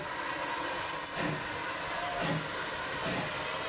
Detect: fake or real real